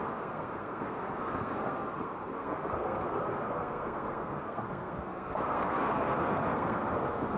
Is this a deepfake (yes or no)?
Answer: yes